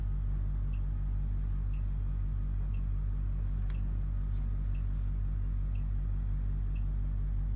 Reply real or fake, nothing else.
real